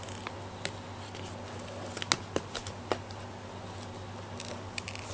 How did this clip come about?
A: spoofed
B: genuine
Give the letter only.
B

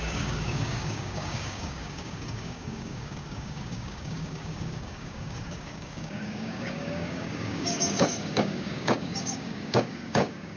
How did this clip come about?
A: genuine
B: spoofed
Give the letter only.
B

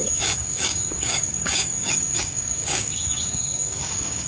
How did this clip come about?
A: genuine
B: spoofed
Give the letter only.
B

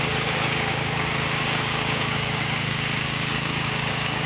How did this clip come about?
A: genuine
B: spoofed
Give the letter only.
B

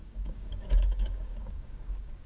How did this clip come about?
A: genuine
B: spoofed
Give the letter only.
B